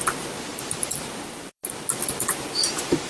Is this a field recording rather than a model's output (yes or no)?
no